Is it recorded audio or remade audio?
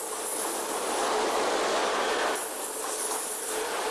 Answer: recorded